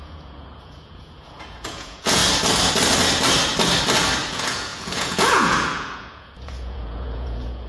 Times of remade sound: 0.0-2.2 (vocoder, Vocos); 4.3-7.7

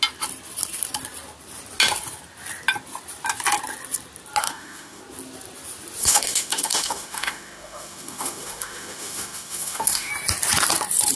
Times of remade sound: 4.4-5.0 (autoencoder, DAC-VAE); 6.0-10.1

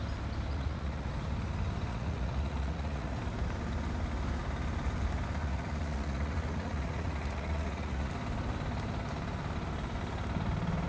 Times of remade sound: 0.5-1.1 (vocoder, Vocos); 1.9-3.2; 5.4-8.1

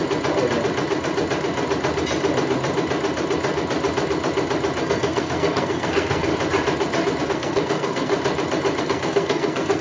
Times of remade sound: 4.8-6.3 (codec, SNAC); 7.2-8.1; 8.8-9.8

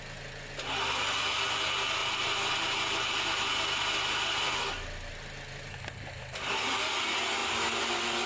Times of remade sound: none

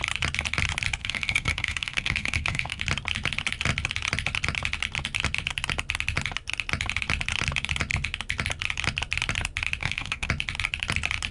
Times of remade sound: 1.0-2.8 (codec, SNAC); 9.8-10.3

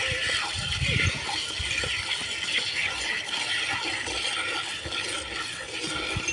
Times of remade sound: 2.5-3.1 (vocoder, Vocos)